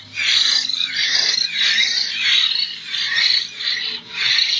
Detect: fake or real real